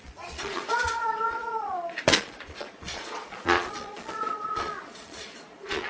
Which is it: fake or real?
fake